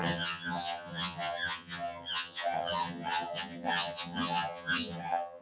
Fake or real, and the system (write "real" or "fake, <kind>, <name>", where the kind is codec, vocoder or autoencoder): fake, vocoder, HiFi-GAN